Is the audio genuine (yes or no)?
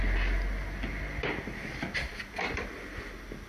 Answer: yes